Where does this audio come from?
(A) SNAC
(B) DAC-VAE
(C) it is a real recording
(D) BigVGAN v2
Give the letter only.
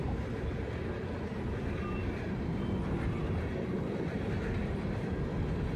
C